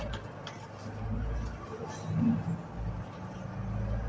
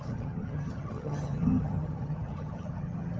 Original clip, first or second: first